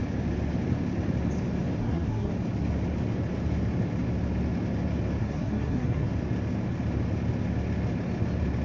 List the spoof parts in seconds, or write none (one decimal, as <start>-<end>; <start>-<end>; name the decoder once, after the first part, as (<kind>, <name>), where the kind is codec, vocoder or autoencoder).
1.8-2.3 (codec, SNAC); 5.2-6.1